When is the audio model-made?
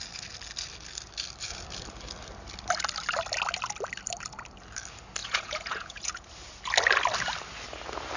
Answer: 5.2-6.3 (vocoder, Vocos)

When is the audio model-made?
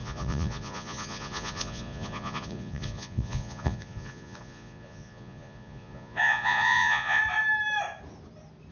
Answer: 0.0-7.2 (vocoder, Vocos)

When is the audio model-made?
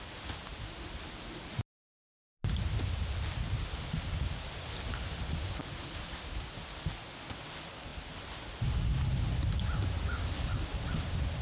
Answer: none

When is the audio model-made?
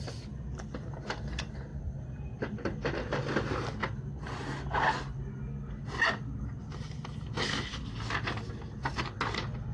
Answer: none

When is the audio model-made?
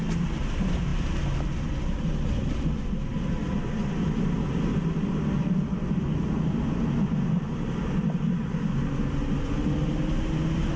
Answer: none